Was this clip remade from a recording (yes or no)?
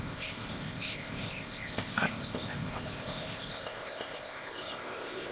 yes